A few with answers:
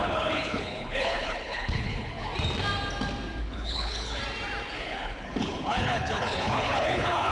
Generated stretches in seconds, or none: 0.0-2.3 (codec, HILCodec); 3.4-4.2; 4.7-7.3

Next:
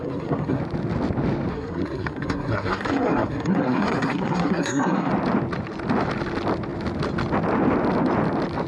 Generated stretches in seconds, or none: 0.0-0.6 (codec, SNAC); 1.5-5.1

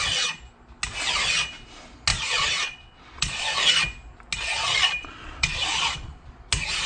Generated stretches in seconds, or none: 2.1-3.4 (vocoder, Vocos); 5.0-6.4

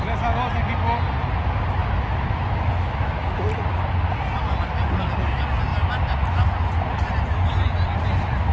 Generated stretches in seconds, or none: 1.8-3.4 (autoencoder, DAC-VAE)

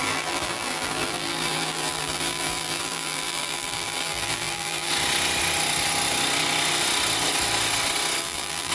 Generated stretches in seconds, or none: 0.0-4.9 (vocoder, BigVGAN v2); 8.2-8.7

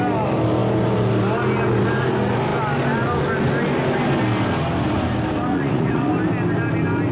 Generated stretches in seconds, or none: 5.5-6.1 (vocoder, Vocos)

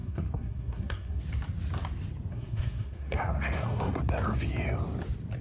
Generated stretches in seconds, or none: 0.0-1.2 (codec, SNAC); 2.3-4.0

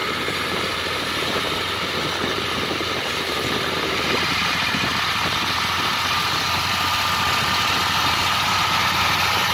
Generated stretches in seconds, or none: 0.0-4.9 (vocoder, BigVGAN v2); 8.0-9.5